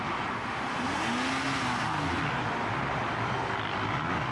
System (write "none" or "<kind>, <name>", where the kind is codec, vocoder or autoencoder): none